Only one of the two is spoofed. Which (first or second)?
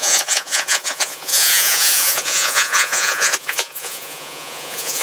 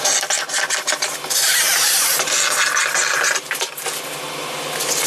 first